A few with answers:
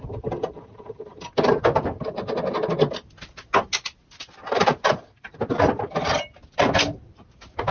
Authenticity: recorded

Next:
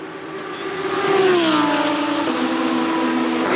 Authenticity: recorded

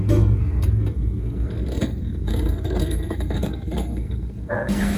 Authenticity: remade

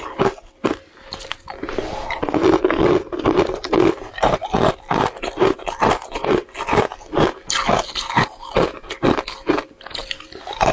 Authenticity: recorded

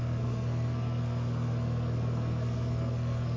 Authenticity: remade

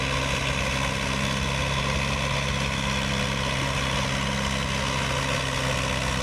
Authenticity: recorded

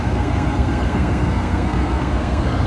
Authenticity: remade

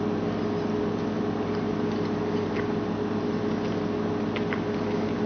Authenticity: recorded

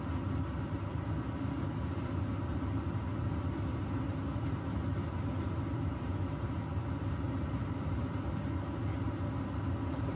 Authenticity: recorded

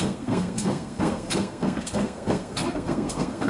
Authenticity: remade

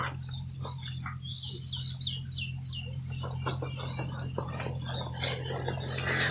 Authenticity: recorded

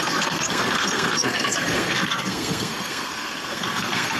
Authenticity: remade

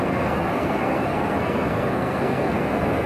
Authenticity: remade